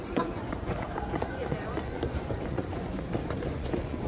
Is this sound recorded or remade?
remade